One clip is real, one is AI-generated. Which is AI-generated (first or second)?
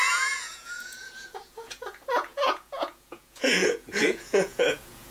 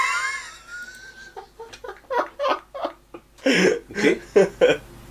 first